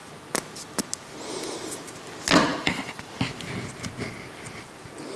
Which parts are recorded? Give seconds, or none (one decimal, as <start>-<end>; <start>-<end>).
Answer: 0.0-2.5; 3.1-5.2